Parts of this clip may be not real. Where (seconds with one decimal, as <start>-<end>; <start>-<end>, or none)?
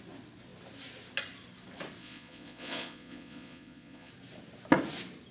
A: 2.0-4.1